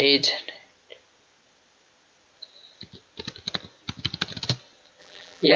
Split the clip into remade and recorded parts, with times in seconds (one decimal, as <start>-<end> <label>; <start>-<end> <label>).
0.0-5.0 recorded; 5.0-5.6 remade